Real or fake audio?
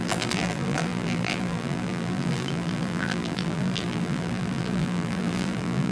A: fake